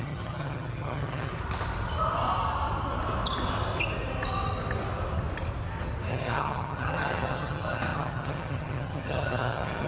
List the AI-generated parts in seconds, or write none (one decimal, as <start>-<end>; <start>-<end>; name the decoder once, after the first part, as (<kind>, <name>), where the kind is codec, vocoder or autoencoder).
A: 0.0-1.3 (vocoder, HiFi-GAN); 6.1-9.9